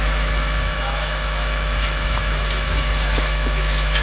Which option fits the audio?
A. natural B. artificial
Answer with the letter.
B